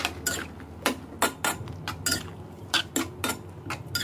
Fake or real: real